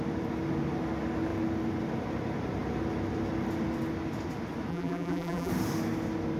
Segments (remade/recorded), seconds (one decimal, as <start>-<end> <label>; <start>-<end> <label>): 0.0-4.7 recorded; 4.7-5.5 remade; 5.5-6.4 recorded